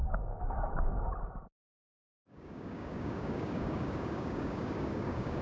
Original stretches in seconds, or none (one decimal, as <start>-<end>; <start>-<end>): 1.1-2.1